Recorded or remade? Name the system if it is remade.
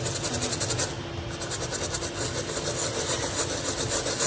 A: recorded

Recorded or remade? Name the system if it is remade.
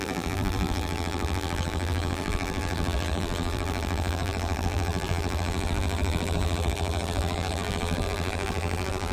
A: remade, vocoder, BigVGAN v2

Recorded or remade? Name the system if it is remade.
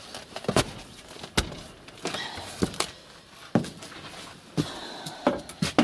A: recorded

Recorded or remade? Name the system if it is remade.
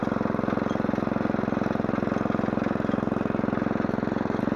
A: recorded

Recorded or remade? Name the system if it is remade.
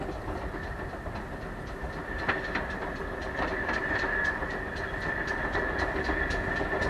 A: recorded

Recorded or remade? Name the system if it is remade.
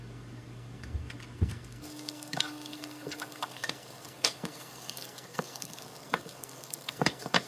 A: remade, codec, SNAC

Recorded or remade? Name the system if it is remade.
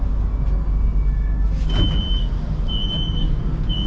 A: recorded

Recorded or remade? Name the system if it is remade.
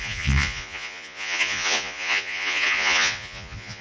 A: remade, vocoder, Vocos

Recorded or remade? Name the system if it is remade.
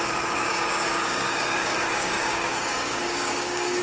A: remade, codec, DAC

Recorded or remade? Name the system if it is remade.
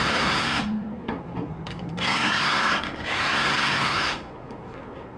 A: remade, codec, SNAC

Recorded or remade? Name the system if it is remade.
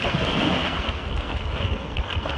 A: remade, codec, SNAC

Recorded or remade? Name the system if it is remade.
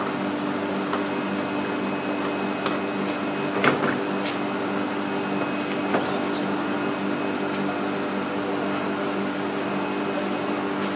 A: recorded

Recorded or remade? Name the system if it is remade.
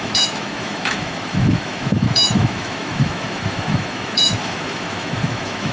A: remade, autoencoder, DAC-VAE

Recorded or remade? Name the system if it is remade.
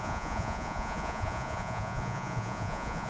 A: remade, vocoder, Vocos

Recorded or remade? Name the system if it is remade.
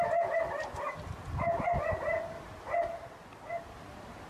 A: recorded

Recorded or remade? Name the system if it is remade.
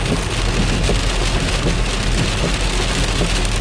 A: recorded